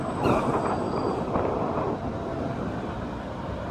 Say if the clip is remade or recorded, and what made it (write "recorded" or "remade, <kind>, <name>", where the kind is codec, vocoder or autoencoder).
recorded